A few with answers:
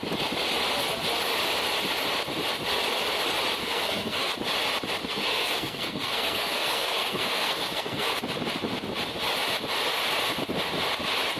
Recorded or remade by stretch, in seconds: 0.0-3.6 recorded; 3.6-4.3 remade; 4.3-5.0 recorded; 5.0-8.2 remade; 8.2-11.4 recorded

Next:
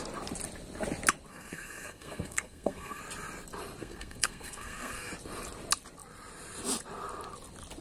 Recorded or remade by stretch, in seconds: 0.0-1.3 recorded; 1.3-3.0 remade; 3.0-3.8 recorded; 3.8-5.1 remade; 5.1-7.8 recorded

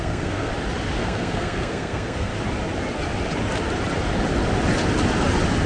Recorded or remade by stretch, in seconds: 0.0-0.5 remade; 0.5-1.0 recorded; 1.0-2.3 remade; 2.3-5.7 recorded

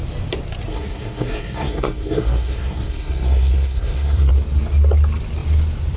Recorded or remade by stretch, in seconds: 0.0-0.7 recorded; 0.7-4.3 remade; 4.3-6.0 recorded

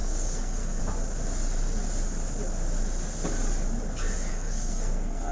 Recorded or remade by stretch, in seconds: 0.0-0.8 remade; 0.8-4.3 recorded; 4.3-5.3 remade

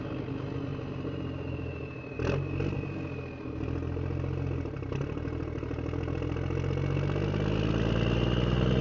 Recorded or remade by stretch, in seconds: 0.0-8.8 recorded

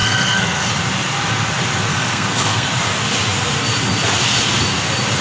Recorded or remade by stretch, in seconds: 0.0-0.7 remade; 0.7-1.9 recorded; 1.9-2.7 remade; 2.7-5.2 recorded

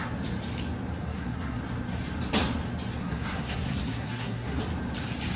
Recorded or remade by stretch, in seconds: 0.0-1.0 recorded; 1.0-1.6 remade; 1.6-3.0 recorded; 3.0-4.6 remade; 4.6-5.4 recorded